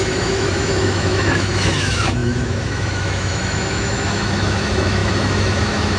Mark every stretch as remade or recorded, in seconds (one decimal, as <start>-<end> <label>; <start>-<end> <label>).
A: 0.0-6.0 remade